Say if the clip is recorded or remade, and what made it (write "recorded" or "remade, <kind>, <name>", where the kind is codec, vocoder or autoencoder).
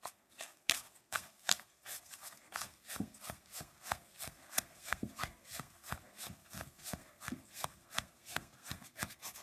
remade, codec, SNAC